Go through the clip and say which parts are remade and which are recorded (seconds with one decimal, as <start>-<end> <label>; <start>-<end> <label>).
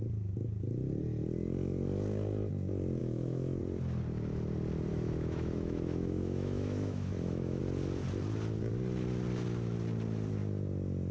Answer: 0.0-3.0 recorded; 3.0-3.6 remade; 3.6-4.9 recorded; 4.9-7.6 remade; 7.6-11.1 recorded